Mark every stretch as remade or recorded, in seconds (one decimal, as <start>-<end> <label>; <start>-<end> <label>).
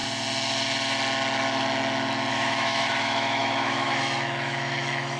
0.0-2.3 recorded; 2.3-5.2 remade